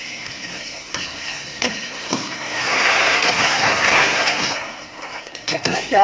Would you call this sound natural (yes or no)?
no